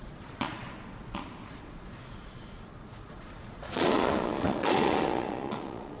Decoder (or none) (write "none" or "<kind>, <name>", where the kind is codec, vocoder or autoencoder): vocoder, Vocos